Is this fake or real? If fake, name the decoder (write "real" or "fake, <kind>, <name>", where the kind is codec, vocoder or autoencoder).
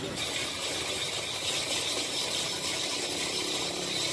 real